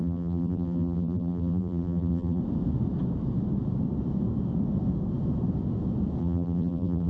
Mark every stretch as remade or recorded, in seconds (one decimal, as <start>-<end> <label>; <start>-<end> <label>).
0.0-2.4 remade; 2.4-6.2 recorded; 6.2-7.1 remade